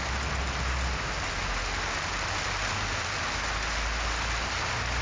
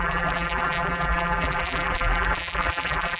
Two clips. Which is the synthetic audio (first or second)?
second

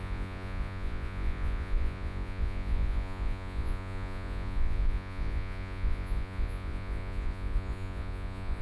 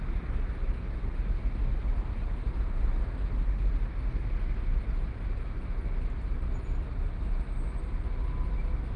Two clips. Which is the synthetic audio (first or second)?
first